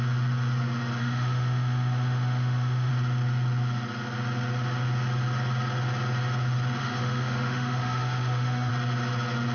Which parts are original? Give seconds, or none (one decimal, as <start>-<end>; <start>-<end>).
0.0-1.0; 2.9-6.8; 8.7-9.5